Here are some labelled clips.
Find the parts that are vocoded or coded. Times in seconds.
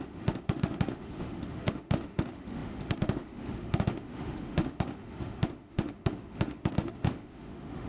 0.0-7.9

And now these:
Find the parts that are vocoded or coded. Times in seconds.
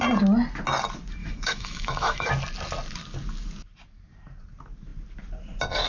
1.2-2.3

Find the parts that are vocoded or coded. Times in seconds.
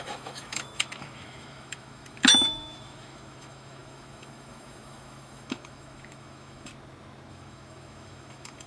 0.0-6.7; 7.3-8.7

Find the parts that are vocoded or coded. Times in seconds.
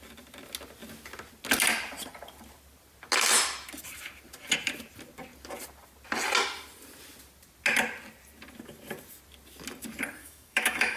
10.2-11.0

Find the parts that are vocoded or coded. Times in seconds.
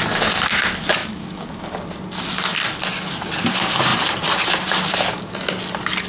1.0-1.6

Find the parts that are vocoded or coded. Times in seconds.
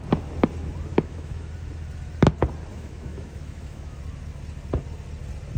0.9-1.5; 2.7-4.0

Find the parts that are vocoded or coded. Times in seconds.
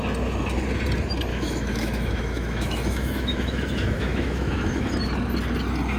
1.3-4.9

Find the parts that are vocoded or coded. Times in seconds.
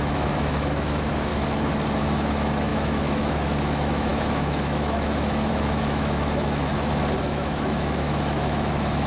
0.0-1.3; 2.0-6.7; 7.2-9.1